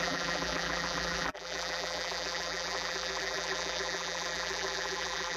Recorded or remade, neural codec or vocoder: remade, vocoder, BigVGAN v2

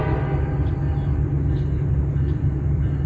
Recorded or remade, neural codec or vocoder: recorded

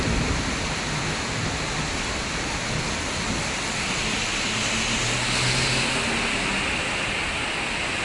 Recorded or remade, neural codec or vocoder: recorded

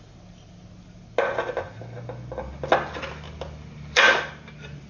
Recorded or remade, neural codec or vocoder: recorded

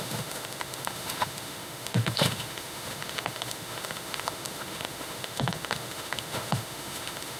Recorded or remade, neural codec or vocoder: remade, autoencoder, DAC-VAE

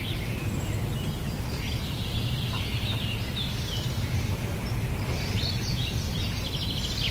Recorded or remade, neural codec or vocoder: recorded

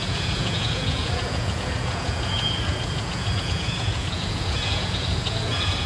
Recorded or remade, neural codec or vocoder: remade, vocoder, Vocos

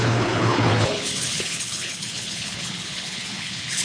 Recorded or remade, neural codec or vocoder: remade, codec, HILCodec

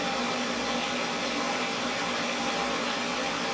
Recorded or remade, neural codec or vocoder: recorded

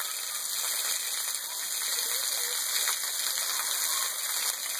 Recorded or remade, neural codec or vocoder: recorded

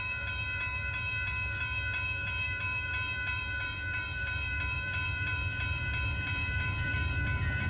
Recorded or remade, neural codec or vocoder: remade, vocoder, BigVGAN v2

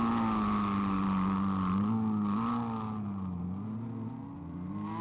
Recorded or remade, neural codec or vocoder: recorded